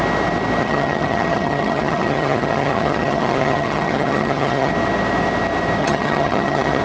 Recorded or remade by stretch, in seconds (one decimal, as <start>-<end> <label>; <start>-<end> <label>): 0.0-0.6 recorded; 0.6-4.7 remade; 4.7-5.8 recorded; 5.8-6.8 remade